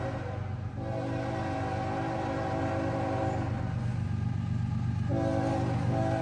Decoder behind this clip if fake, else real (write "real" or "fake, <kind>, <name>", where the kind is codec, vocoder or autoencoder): real